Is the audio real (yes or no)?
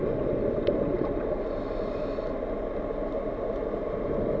yes